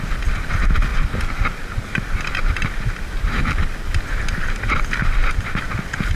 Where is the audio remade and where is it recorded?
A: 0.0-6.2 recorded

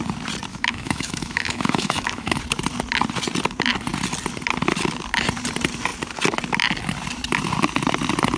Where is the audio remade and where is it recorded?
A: 0.0-0.5 recorded; 0.5-2.4 remade; 2.4-8.4 recorded

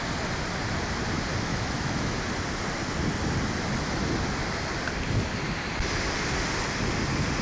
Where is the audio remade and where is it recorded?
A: 0.0-1.5 recorded; 1.5-2.2 remade; 2.2-7.4 recorded

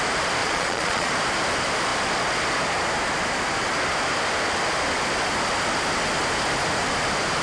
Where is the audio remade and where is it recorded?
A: 0.0-0.4 recorded; 0.4-1.1 remade; 1.1-7.4 recorded

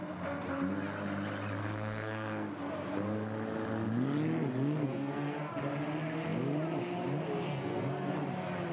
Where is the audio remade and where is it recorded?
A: 0.0-1.6 recorded; 1.6-2.5 remade; 2.5-4.8 recorded; 4.8-5.5 remade; 5.5-7.5 recorded; 7.5-8.1 remade; 8.1-8.7 recorded